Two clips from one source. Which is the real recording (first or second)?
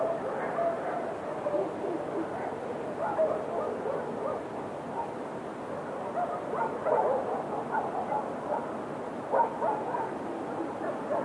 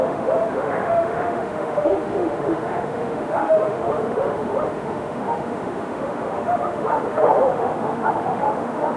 first